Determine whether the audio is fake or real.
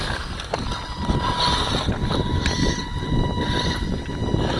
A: fake